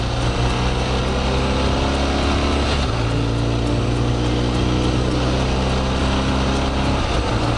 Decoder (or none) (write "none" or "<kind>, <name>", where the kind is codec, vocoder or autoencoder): none